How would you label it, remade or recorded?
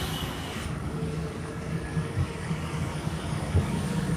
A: remade